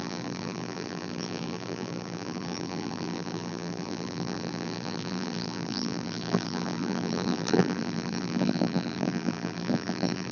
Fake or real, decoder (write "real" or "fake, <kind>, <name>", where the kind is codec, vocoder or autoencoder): fake, vocoder, BigVGAN v2